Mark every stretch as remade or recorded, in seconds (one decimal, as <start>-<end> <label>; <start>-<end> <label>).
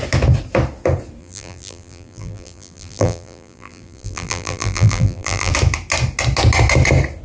0.0-1.2 recorded; 1.2-5.5 remade; 5.5-7.2 recorded